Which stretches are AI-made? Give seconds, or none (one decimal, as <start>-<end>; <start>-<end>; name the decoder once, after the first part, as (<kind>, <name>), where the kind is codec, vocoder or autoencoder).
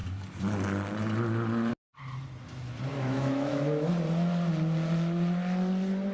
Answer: 2.9-3.9 (autoencoder, DAC-VAE)